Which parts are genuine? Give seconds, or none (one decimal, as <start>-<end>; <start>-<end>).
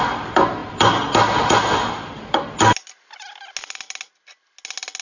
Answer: 0.0-5.0